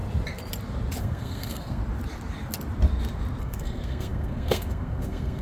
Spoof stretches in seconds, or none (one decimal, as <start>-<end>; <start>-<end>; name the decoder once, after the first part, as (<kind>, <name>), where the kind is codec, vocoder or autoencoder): 1.0-1.8 (codec, SNAC); 3.4-5.4